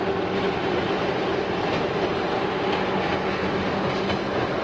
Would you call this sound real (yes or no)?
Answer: yes